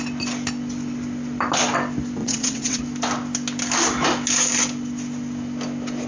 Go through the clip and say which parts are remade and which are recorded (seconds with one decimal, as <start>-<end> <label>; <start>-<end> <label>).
0.0-2.2 recorded; 2.2-2.8 remade; 2.8-6.1 recorded